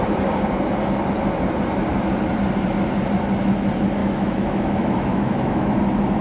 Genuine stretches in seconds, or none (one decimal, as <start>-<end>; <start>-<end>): 0.0-4.0; 5.7-6.2